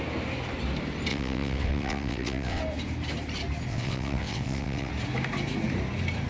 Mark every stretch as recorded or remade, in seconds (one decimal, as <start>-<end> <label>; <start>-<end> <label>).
0.0-1.1 recorded; 1.1-2.6 remade; 2.6-3.7 recorded; 3.7-4.9 remade; 4.9-6.3 recorded